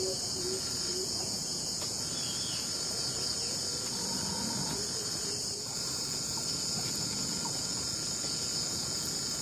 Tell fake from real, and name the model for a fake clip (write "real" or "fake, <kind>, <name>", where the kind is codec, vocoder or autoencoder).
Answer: fake, vocoder, Vocos